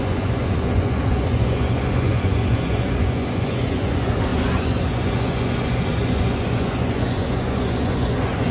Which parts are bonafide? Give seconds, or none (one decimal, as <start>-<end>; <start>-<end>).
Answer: none